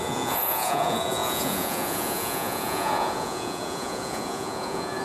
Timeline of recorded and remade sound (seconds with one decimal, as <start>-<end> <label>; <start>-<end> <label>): 0.0-5.0 remade